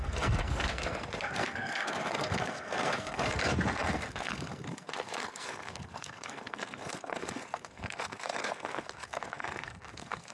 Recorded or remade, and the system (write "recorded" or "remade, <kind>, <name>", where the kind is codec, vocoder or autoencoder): remade, codec, SNAC